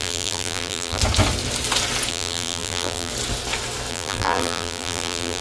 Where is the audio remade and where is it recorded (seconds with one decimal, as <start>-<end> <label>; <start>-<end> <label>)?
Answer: 0.0-1.0 remade; 1.0-2.1 recorded; 2.1-3.1 remade; 3.1-3.9 recorded; 3.9-5.4 remade